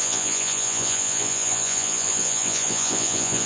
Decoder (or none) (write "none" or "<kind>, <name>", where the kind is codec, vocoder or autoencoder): vocoder, Vocos